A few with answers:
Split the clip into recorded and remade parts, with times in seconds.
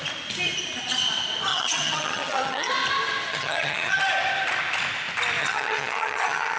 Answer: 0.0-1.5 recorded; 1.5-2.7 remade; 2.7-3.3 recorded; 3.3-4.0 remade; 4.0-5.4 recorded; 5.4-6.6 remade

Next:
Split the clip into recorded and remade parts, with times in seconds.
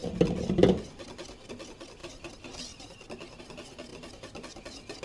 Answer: 0.0-5.0 recorded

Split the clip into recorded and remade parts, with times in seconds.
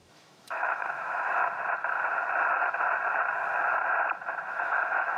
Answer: 0.0-1.4 remade; 1.4-4.5 recorded; 4.5-5.2 remade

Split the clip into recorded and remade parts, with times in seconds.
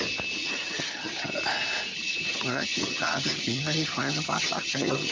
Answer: 0.0-0.4 recorded; 0.4-1.4 remade; 1.4-1.9 recorded; 1.9-5.1 remade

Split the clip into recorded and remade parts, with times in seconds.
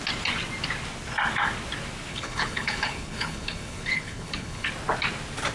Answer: 0.0-2.1 recorded; 2.1-4.7 remade; 4.7-5.5 recorded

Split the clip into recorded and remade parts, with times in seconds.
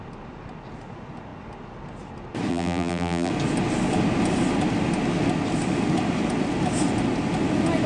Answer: 0.0-2.5 recorded; 2.5-3.3 remade; 3.3-7.9 recorded